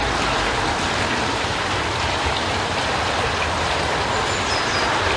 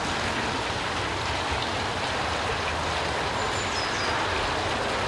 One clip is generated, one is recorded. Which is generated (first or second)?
first